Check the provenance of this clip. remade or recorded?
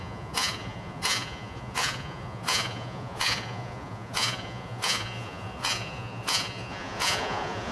remade